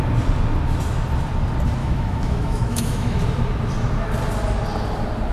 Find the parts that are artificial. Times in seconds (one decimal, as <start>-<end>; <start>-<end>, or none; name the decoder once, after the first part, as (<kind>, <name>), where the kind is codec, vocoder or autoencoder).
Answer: 1.8-3.2 (autoencoder, DAC-VAE)